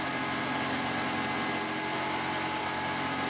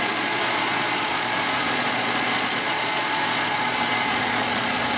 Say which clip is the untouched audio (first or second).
first